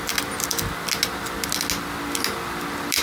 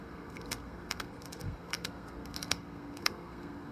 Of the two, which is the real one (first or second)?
first